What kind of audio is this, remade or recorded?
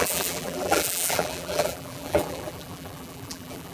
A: remade